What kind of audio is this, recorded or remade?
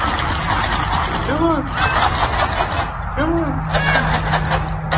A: recorded